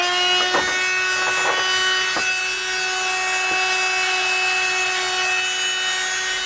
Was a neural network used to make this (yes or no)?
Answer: no